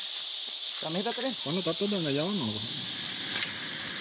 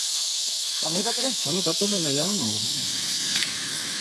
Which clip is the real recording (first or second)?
first